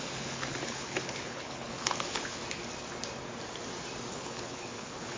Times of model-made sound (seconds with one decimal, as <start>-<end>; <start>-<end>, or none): 0.0-2.4; 4.1-5.2